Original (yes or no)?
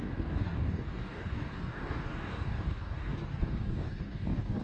no